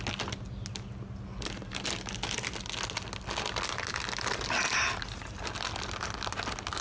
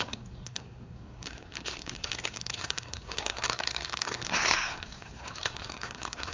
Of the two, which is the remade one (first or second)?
second